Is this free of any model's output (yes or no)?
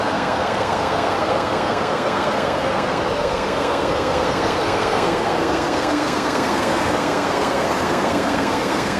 no